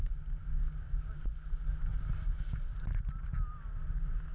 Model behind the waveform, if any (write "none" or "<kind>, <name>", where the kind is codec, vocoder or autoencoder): none